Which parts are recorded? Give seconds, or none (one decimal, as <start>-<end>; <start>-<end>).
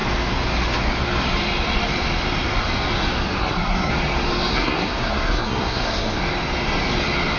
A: 0.0-3.4; 3.9-4.5; 6.2-7.4